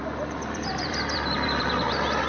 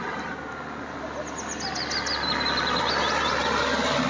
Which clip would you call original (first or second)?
second